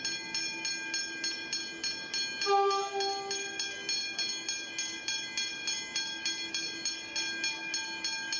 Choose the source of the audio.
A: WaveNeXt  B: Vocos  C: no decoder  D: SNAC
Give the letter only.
C